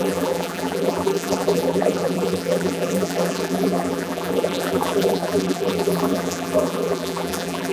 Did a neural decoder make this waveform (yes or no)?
yes